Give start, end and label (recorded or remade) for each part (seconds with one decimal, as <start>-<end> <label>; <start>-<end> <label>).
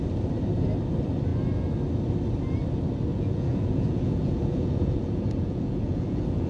0.0-3.1 recorded; 3.1-6.5 remade